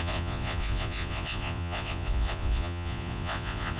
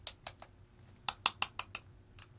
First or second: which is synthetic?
first